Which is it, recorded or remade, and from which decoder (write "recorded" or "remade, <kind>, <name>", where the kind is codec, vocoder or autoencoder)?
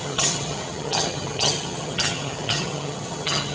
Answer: remade, vocoder, HiFi-GAN